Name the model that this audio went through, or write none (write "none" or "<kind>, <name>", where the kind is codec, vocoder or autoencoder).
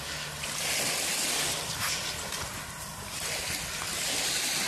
none